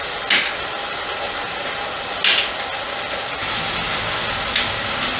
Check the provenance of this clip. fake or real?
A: real